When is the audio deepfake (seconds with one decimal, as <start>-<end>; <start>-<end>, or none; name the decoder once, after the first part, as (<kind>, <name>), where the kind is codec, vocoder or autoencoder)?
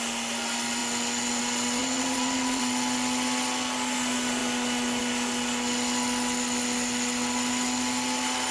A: 1.8-2.6 (vocoder, Vocos)